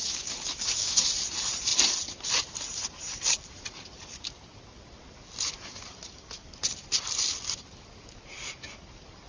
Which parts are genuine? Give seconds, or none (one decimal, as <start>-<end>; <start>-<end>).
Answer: 1.0-9.3